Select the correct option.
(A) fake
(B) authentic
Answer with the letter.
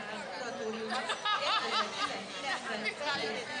B